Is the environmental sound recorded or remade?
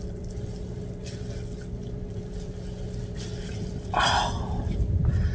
recorded